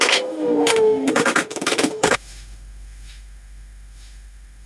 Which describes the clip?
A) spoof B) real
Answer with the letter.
A